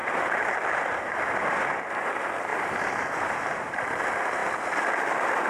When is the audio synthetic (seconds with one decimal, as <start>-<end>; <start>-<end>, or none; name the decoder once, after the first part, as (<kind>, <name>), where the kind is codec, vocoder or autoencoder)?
0.0-2.1 (vocoder, BigVGAN v2); 2.5-3.8